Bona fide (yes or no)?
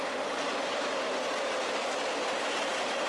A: yes